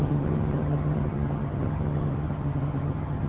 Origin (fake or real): fake